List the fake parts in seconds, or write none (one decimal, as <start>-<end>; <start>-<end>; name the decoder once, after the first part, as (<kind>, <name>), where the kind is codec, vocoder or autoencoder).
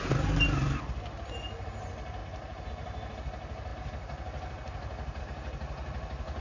none